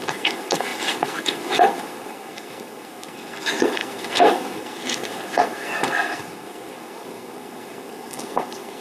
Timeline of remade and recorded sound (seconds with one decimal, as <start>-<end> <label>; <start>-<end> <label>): 0.0-8.8 remade